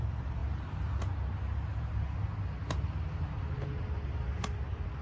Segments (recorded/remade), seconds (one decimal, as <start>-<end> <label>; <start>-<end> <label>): 0.0-5.0 recorded